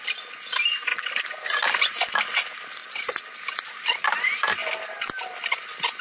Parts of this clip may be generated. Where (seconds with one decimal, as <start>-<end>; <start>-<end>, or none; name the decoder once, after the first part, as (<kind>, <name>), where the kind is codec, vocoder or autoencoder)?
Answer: 0.0-0.9 (vocoder, BigVGAN v2); 2.2-4.6